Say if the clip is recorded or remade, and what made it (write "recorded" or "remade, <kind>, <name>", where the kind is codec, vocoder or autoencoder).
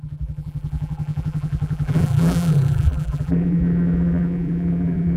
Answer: remade, vocoder, BigVGAN v2